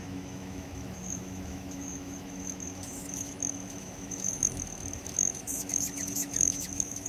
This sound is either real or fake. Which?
fake